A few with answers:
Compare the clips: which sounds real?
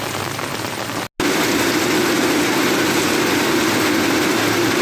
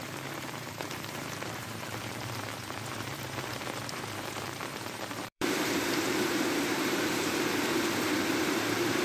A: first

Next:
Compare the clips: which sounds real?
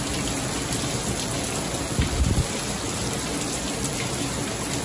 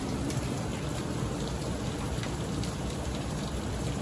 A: first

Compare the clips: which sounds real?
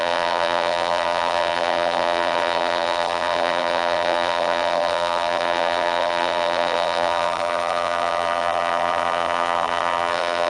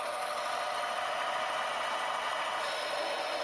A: second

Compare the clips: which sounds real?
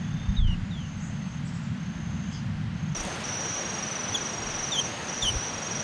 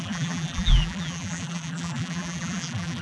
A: first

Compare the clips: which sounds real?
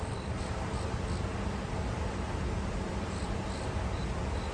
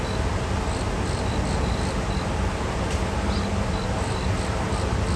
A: second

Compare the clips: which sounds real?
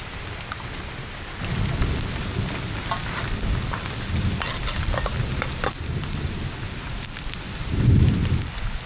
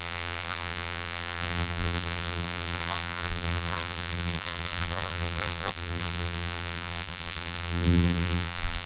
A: first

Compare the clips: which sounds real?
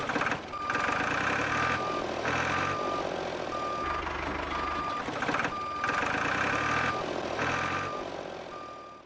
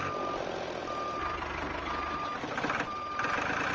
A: first